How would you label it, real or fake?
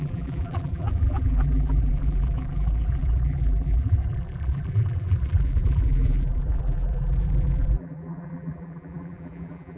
fake